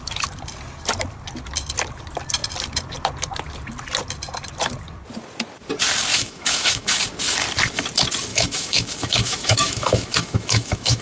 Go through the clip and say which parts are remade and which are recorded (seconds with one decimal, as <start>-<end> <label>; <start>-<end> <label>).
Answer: 0.0-6.1 recorded; 6.1-7.0 remade; 7.0-8.3 recorded; 8.3-11.0 remade